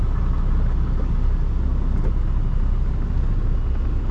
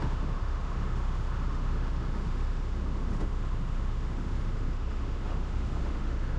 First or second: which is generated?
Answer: second